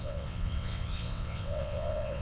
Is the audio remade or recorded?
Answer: remade